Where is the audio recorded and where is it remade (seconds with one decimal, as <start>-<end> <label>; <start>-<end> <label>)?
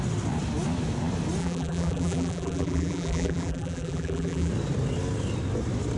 0.0-1.4 recorded; 1.4-4.5 remade; 4.5-6.0 recorded